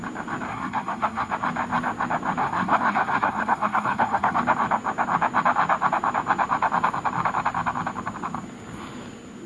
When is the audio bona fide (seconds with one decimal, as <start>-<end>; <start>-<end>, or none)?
0.0-0.5; 1.3-2.4; 4.4-9.5